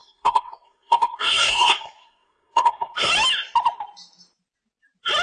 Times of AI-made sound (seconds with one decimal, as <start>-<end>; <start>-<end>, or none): 0.0-3.1